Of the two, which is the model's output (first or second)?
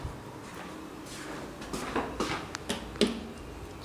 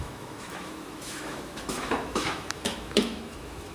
second